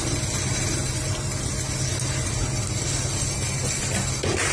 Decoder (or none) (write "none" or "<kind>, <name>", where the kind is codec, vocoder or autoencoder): none